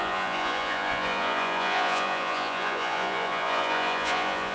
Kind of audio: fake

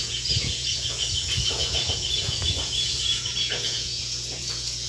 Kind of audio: fake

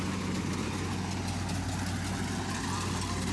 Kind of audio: real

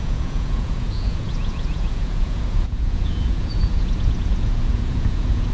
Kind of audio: fake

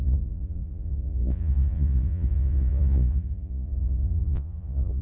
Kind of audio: fake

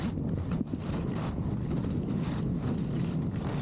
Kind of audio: real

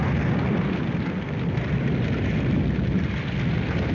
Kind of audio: real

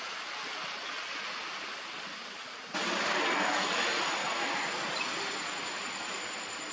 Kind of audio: real